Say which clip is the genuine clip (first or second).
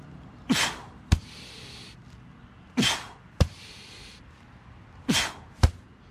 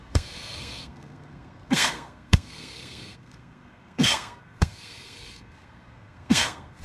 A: first